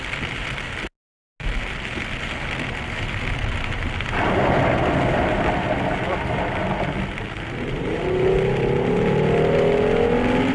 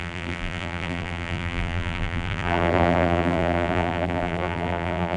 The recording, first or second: first